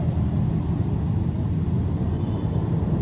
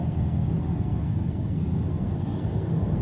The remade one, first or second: second